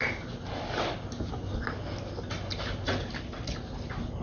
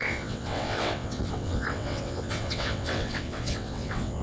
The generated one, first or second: second